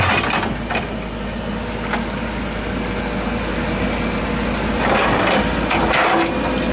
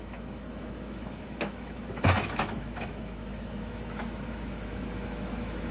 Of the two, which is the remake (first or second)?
second